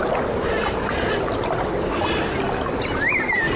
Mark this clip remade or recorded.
recorded